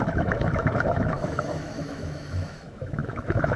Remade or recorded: remade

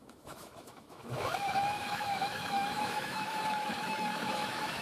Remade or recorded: remade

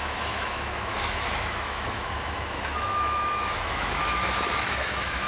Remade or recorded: remade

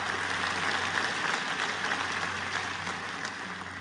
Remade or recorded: recorded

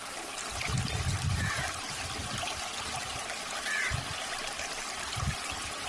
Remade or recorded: recorded